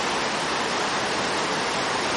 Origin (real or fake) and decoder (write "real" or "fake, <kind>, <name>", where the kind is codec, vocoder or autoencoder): real